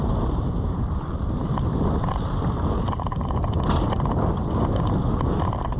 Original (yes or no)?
yes